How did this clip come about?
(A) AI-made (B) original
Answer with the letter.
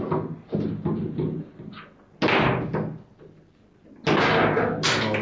B